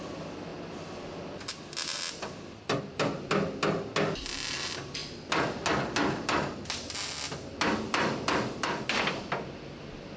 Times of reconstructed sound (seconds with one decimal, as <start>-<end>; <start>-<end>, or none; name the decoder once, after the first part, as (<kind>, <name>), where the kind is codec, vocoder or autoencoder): none